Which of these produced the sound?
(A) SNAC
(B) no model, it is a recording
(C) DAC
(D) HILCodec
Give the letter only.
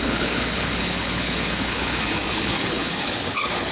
D